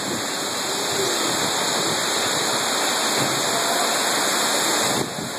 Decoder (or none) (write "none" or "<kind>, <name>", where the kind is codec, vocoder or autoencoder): none